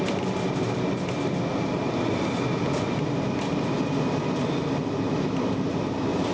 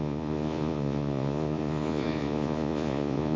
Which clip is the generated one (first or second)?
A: second